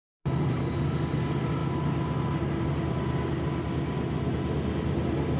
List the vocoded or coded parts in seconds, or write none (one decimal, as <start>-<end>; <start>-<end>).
0.0-0.6